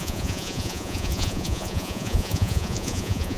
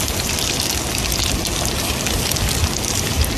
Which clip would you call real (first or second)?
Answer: second